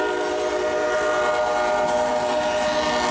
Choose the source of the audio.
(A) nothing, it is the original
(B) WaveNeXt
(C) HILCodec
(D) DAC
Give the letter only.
A